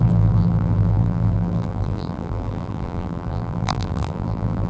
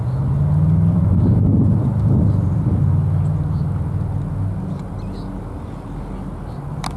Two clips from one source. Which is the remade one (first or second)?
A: first